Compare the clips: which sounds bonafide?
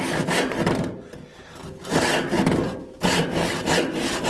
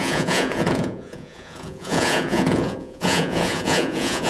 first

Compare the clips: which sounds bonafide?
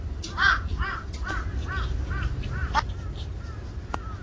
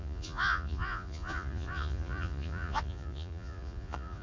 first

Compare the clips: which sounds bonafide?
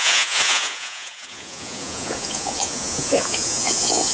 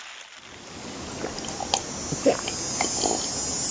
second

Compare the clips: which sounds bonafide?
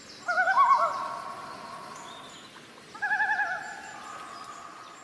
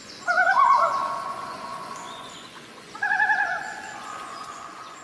first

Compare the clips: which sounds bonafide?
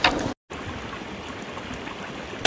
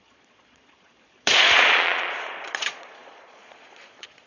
first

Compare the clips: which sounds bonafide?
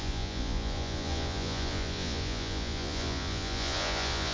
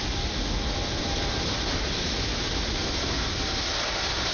second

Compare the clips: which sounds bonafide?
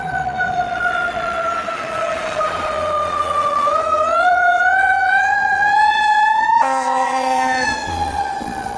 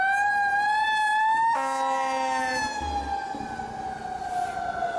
second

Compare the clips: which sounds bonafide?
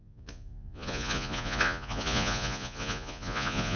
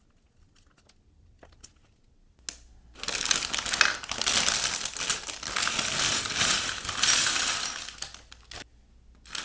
second